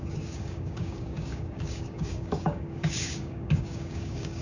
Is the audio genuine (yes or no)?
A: no